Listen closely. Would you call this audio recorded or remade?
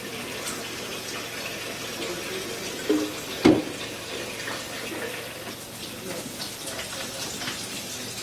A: recorded